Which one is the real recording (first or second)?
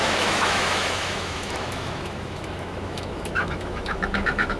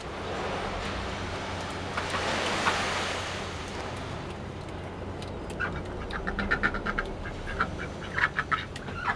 second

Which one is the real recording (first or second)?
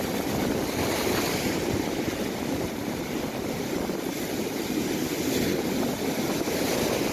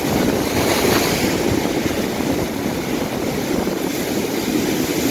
second